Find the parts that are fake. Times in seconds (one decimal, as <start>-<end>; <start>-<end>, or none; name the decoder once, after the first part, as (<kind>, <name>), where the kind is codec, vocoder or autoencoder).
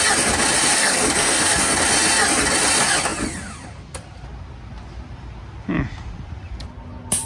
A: 0.7-1.8 (codec, SNAC)